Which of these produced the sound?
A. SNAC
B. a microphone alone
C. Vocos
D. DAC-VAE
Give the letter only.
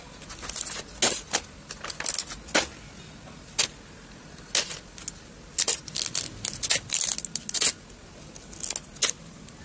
B